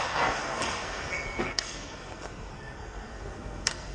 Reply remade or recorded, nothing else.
remade